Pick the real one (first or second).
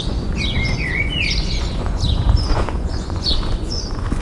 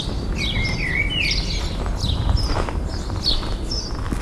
second